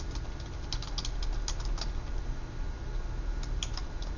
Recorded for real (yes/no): yes